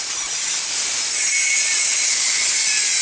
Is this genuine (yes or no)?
yes